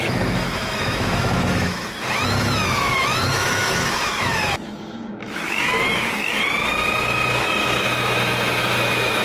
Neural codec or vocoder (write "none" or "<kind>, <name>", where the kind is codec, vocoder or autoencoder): autoencoder, DAC-VAE